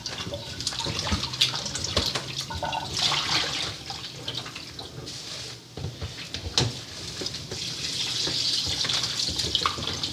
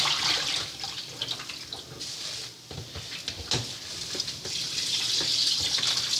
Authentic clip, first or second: first